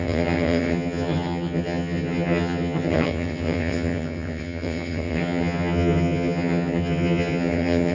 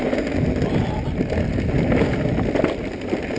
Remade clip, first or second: first